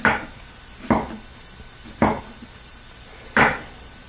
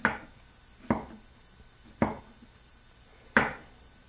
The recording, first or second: second